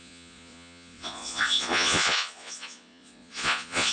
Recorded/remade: remade